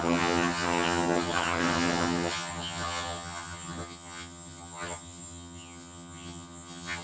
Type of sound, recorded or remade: remade